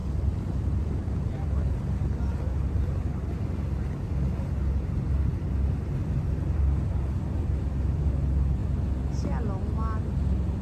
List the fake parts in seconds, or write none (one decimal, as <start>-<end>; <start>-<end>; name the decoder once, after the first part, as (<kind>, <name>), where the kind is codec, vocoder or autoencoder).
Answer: 0.0-2.3 (vocoder, BigVGAN v2); 6.0-8.1